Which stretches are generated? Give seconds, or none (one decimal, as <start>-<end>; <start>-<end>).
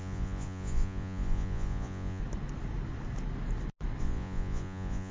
0.0-2.2; 4.0-5.1